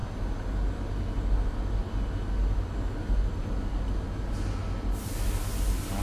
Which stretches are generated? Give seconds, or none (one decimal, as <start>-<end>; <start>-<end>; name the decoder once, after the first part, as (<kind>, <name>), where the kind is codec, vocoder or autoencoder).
none